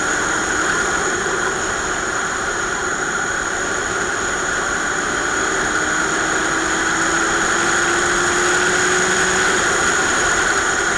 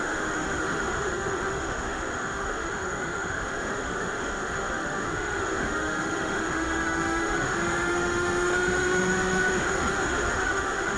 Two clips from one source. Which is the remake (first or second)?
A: second